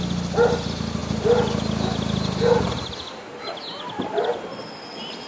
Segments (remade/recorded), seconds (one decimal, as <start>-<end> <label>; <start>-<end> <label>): 0.0-5.3 recorded